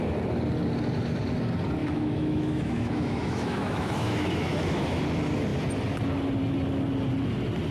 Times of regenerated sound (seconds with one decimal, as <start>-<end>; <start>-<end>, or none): 1.8-5.0